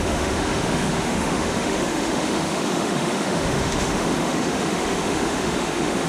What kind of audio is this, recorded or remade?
remade